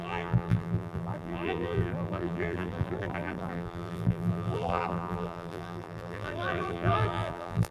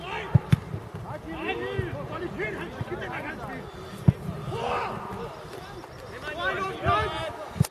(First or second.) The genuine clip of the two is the second